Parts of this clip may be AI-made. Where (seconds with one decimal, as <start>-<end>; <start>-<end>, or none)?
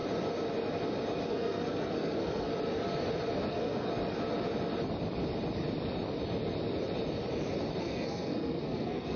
1.3-2.5; 3.5-3.9; 7.8-9.2